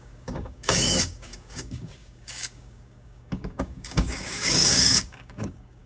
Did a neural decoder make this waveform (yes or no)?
yes